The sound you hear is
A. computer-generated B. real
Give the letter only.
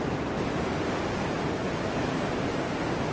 B